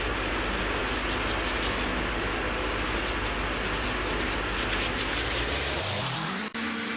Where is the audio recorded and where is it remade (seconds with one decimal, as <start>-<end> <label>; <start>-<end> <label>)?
0.0-7.0 recorded